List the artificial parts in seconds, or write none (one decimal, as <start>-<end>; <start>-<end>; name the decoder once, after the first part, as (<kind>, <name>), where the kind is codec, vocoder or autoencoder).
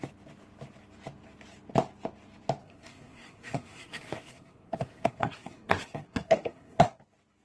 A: 2.6-7.0 (codec, SNAC)